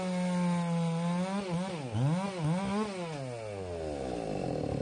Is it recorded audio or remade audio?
recorded